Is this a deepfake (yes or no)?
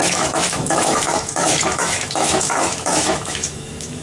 yes